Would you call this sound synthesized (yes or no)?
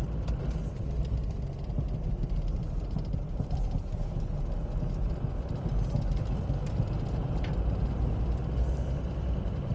no